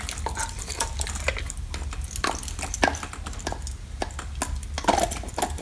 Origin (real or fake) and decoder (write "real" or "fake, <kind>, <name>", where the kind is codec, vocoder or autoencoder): real